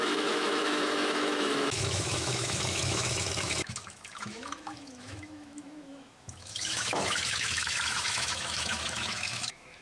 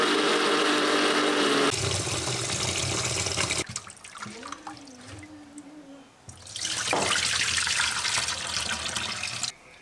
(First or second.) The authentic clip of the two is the second